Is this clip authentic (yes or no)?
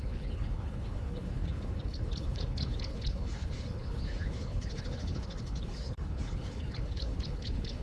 no